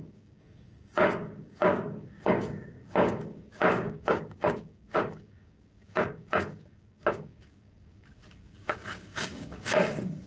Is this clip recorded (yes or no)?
no